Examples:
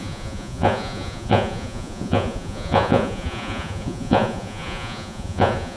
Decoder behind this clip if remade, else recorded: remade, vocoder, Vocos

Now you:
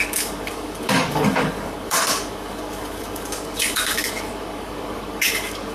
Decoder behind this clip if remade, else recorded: remade, codec, DAC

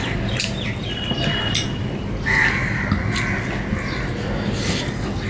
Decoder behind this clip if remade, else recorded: recorded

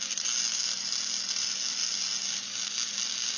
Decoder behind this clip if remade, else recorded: recorded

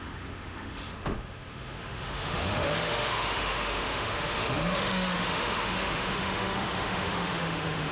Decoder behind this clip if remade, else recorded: remade, autoencoder, DAC-VAE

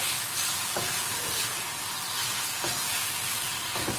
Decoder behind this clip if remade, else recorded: recorded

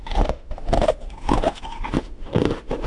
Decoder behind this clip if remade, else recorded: remade, autoencoder, DAC-VAE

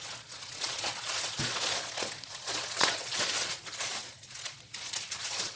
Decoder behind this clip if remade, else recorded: remade, vocoder, Vocos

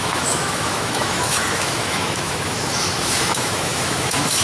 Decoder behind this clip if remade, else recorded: remade, autoencoder, DAC-VAE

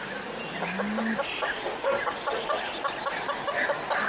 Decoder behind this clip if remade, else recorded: recorded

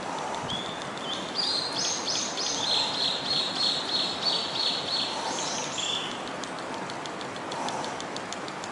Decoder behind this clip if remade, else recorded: recorded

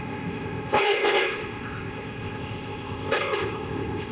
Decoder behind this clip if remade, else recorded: remade, codec, ZipCodec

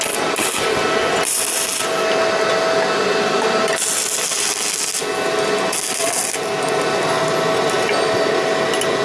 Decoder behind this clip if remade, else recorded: recorded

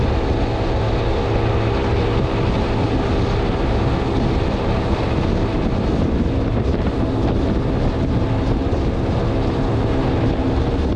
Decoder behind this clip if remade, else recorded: recorded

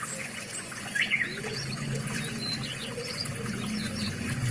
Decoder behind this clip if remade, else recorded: remade, vocoder, Vocos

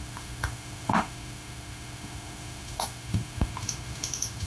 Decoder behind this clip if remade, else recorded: remade, autoencoder, DAC-VAE